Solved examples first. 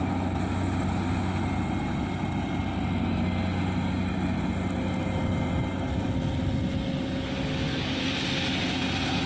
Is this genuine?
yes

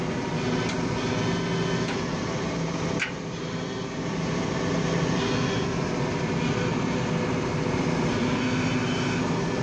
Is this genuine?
yes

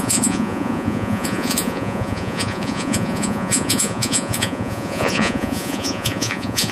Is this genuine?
no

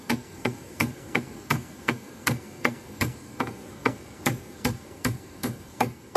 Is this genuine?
no